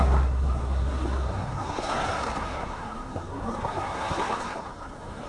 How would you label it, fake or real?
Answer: fake